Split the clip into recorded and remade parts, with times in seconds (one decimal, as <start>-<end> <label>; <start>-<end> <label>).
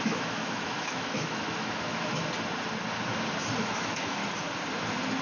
0.0-2.2 remade; 2.2-3.6 recorded; 3.6-4.2 remade; 4.2-5.2 recorded